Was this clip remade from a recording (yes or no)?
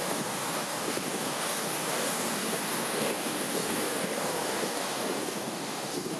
yes